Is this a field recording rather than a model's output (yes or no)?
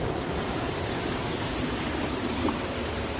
yes